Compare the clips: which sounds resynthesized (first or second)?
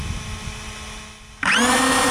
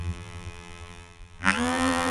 second